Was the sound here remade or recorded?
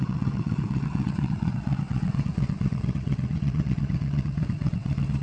remade